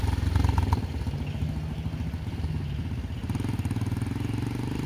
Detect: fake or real real